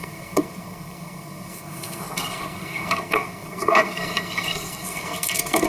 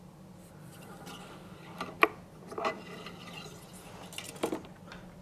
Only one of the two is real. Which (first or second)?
second